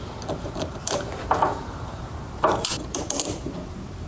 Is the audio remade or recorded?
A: remade